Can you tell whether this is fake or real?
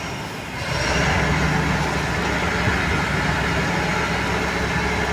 real